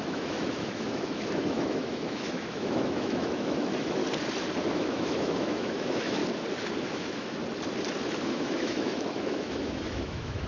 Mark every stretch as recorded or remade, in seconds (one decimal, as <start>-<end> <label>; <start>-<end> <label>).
0.0-4.0 remade; 4.0-4.7 recorded; 4.7-6.2 remade; 6.2-6.9 recorded; 6.9-7.4 remade; 7.4-8.2 recorded; 8.2-10.5 remade

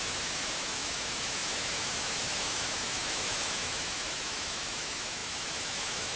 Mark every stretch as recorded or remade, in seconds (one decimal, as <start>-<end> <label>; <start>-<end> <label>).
0.0-6.2 remade

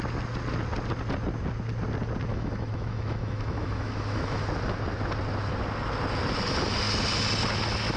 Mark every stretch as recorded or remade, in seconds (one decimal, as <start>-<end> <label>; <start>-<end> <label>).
0.0-2.3 recorded; 2.3-4.4 remade; 4.4-8.0 recorded

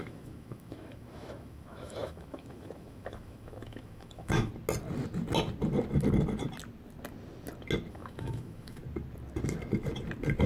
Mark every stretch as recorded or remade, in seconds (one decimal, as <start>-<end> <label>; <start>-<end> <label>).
0.0-4.5 remade; 4.5-7.9 recorded; 7.9-8.8 remade; 8.8-10.5 recorded

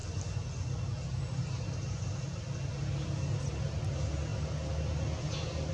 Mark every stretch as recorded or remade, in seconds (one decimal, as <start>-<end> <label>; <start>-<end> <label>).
0.0-5.7 recorded

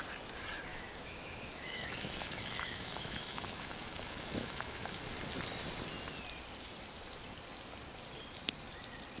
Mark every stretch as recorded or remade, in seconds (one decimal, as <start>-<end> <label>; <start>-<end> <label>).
0.0-0.7 recorded; 0.7-5.0 remade; 5.0-9.2 recorded

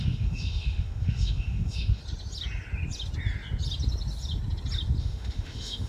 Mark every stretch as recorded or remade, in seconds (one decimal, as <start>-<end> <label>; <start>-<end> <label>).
0.0-2.0 remade; 2.0-5.0 recorded; 5.0-5.9 remade

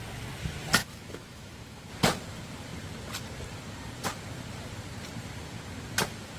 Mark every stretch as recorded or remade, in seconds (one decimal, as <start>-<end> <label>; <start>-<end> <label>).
0.0-0.8 recorded; 0.8-1.9 remade; 1.9-6.4 recorded